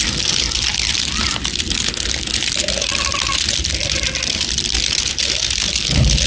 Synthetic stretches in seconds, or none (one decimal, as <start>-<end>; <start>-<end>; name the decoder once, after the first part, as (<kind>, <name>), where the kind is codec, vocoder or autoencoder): none